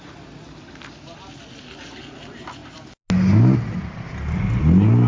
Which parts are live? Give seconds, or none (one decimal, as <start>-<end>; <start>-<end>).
0.0-5.1